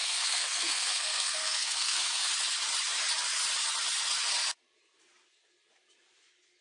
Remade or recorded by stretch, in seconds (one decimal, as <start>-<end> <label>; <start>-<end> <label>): 0.0-2.3 remade; 2.3-6.6 recorded